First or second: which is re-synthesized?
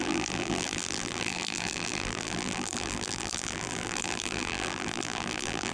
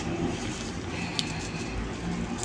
first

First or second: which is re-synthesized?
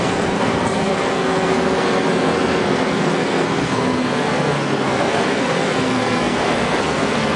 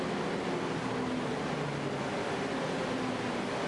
first